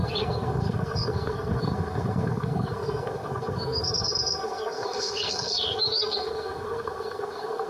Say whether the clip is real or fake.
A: fake